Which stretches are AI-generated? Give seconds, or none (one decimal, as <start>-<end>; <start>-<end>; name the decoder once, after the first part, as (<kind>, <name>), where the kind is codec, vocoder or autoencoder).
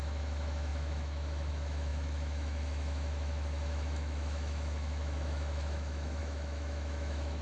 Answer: 0.0-7.4 (autoencoder, DAC-VAE)